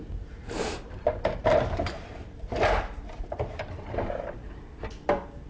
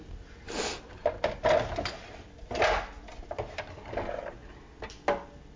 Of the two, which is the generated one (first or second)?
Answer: first